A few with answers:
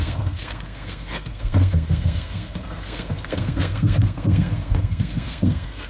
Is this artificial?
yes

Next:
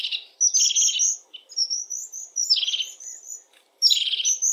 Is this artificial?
no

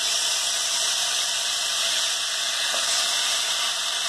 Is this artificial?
no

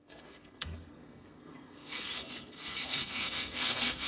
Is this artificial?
yes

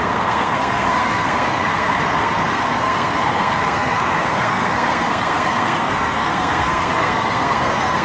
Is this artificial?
yes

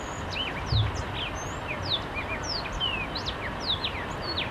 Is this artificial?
no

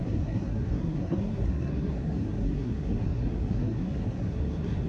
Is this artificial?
yes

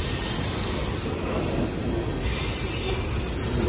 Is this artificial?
no